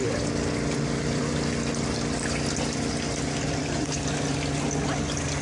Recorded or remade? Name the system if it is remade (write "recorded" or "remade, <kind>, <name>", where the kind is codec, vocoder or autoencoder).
recorded